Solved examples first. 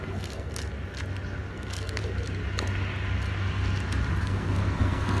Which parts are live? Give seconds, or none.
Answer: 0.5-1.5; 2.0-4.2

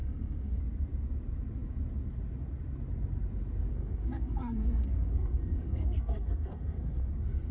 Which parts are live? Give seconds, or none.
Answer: 0.6-3.7; 7.1-7.5

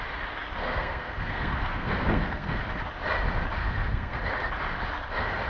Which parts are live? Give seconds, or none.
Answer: 0.0-0.6; 2.6-3.6; 4.2-5.5

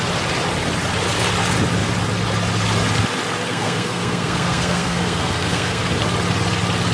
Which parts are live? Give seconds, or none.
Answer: 0.0-3.5; 5.8-6.9

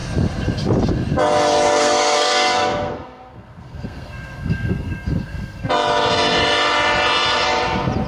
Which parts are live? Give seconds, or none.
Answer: 0.0-1.7; 5.7-8.1

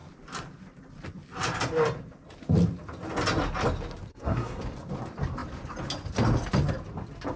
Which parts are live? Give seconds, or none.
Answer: 0.0-4.1; 4.6-7.4